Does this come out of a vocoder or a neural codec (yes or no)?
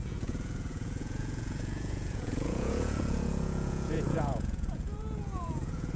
yes